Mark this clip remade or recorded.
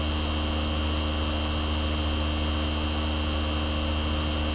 recorded